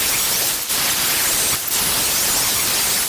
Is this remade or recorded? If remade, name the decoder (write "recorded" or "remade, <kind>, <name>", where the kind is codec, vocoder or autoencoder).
recorded